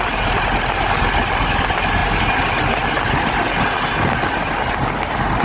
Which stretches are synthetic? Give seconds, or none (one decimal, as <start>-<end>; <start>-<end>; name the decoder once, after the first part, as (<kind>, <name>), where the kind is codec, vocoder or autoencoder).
none